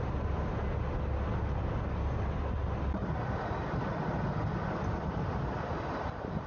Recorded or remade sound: recorded